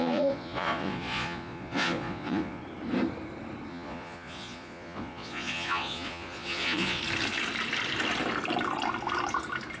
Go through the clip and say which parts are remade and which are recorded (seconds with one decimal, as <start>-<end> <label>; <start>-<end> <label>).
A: 0.0-2.6 remade; 2.6-3.7 recorded; 3.7-7.0 remade; 7.0-9.8 recorded